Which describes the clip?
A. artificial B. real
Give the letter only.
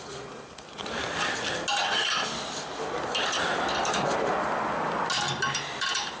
B